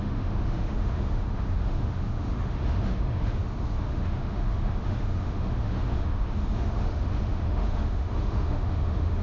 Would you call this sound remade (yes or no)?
yes